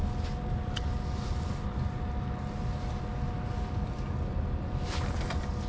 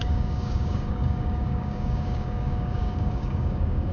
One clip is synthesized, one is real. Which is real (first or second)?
first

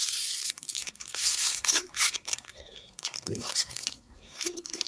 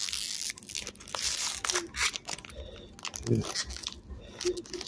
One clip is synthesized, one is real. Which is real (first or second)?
second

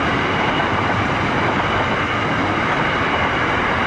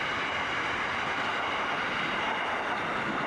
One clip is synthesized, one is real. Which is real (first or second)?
second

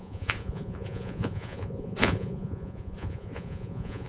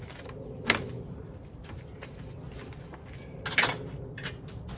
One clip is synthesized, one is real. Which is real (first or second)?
second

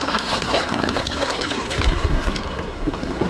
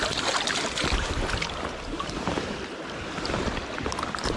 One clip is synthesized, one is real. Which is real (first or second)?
second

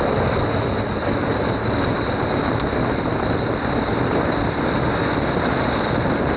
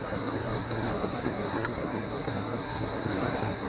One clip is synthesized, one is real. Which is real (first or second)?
first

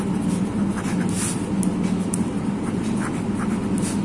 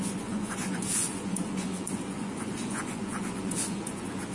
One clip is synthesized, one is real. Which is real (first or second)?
first